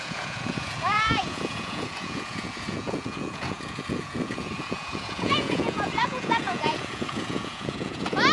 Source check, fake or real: fake